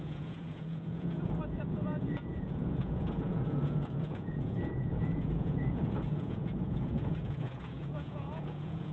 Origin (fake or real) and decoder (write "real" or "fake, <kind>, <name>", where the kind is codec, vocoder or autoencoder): fake, vocoder, Vocos